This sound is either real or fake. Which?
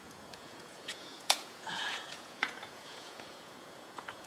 fake